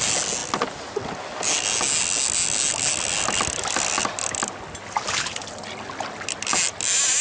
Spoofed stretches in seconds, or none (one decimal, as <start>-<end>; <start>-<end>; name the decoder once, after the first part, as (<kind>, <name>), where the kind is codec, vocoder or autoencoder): none